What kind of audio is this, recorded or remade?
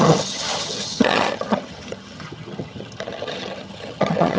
remade